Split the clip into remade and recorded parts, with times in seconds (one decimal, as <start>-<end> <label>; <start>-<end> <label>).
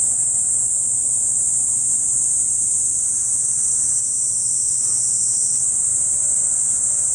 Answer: 0.0-5.9 recorded; 5.9-6.5 remade; 6.5-7.1 recorded